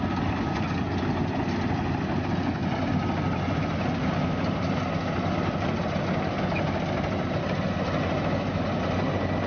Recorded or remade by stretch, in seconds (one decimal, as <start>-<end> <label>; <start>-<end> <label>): 0.0-9.5 recorded